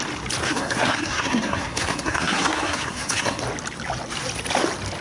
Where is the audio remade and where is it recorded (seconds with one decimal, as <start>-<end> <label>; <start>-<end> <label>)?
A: 0.0-0.4 recorded; 0.4-3.4 remade; 3.4-5.0 recorded